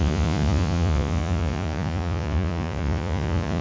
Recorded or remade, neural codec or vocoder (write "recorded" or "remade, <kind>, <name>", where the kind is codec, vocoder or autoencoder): remade, vocoder, Vocos